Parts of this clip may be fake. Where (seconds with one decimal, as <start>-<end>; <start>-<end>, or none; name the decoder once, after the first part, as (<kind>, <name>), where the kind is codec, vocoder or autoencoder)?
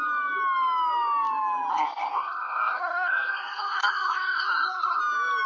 1.7-5.0 (codec, SNAC)